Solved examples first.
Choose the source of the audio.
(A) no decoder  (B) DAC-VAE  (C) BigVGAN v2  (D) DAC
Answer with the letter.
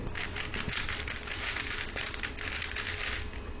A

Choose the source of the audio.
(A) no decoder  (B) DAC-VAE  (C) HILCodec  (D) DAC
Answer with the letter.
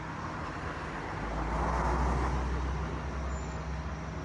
A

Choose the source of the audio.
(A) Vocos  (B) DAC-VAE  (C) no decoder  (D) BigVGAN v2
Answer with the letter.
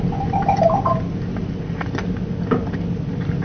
C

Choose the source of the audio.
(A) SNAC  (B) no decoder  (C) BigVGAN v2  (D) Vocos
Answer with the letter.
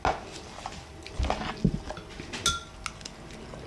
B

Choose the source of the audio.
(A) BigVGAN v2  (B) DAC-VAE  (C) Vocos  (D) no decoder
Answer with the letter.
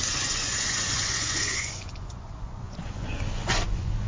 C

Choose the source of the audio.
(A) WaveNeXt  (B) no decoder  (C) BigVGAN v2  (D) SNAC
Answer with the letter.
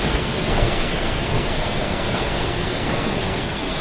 D